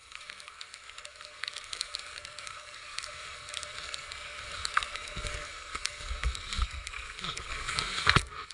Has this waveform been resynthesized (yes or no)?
yes